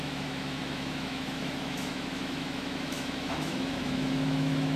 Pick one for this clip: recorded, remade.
remade